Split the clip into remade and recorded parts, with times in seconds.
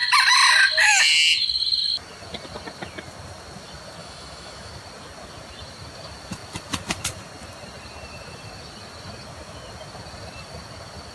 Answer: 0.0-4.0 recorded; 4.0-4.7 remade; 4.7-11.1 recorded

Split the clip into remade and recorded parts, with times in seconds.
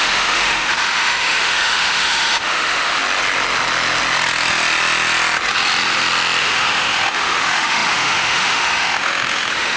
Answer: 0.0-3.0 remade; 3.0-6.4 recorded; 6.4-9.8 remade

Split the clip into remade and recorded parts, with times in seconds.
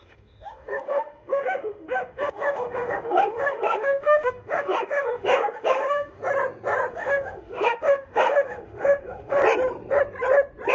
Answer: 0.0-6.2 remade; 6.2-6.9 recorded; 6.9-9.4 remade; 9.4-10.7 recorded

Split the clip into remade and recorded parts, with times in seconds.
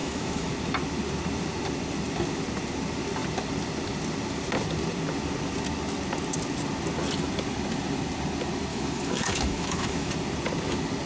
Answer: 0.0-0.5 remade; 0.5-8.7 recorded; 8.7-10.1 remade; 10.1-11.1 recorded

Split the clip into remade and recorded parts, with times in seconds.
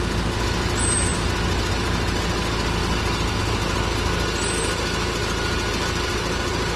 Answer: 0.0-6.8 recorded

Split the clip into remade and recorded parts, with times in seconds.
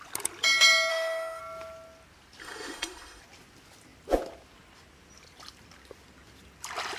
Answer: 0.0-0.9 recorded; 0.9-1.4 remade; 1.4-2.4 recorded; 2.4-3.2 remade; 3.2-7.0 recorded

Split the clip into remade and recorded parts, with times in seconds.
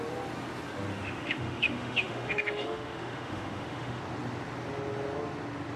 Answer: 0.0-0.9 recorded; 0.9-4.0 remade; 4.0-5.8 recorded